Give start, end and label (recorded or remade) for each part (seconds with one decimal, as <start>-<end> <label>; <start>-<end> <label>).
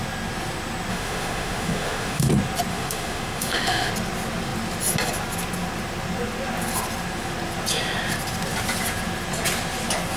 0.0-0.9 recorded; 0.9-2.3 remade; 2.3-2.7 recorded; 2.7-3.9 remade; 3.9-10.2 recorded